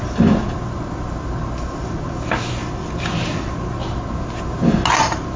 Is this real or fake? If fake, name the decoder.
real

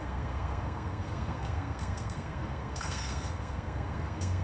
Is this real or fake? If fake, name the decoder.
fake, codec, SNAC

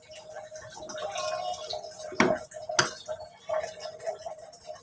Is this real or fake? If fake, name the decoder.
real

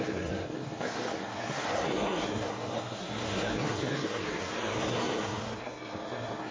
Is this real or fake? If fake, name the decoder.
fake, codec, SNAC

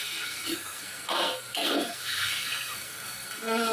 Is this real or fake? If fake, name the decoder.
fake, codec, SNAC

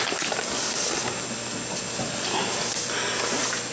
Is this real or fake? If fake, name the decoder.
real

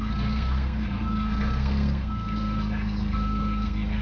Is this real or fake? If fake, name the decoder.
fake, codec, SNAC